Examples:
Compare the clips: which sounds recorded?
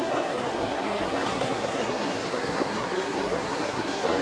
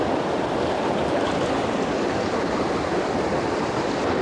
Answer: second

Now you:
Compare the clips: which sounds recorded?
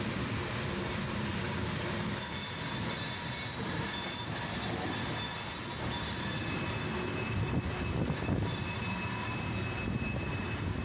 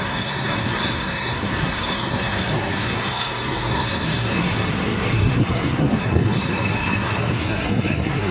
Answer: first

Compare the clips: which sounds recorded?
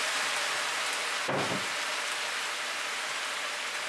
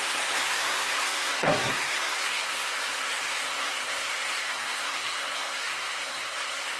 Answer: first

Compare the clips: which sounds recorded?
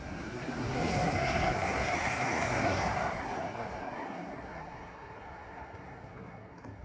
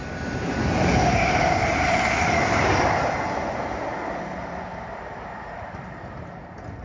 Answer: second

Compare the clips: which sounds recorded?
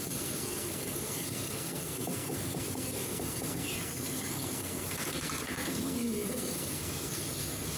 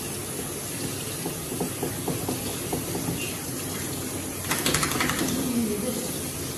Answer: second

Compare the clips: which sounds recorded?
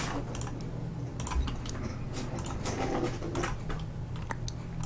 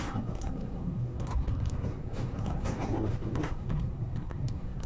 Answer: first